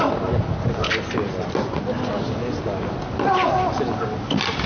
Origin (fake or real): real